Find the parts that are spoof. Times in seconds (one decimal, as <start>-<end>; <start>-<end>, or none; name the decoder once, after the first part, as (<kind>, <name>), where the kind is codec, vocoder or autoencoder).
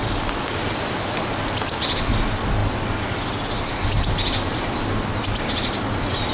none